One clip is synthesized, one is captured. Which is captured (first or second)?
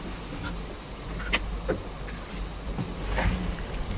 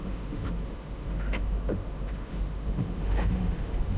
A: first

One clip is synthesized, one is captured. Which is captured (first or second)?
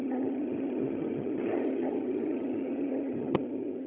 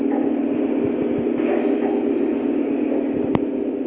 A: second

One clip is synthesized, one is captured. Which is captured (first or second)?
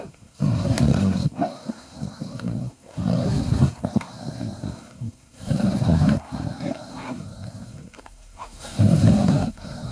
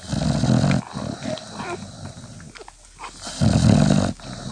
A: second